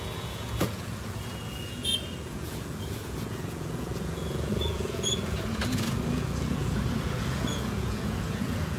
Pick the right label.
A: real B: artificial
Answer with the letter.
B